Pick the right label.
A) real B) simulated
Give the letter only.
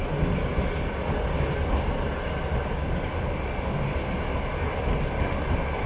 A